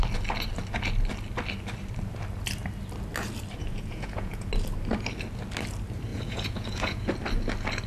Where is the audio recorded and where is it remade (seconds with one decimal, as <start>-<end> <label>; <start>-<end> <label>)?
0.0-3.7 recorded; 3.7-4.5 remade; 4.5-6.1 recorded; 6.1-7.1 remade; 7.1-7.9 recorded